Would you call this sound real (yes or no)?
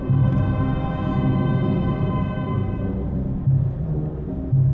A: yes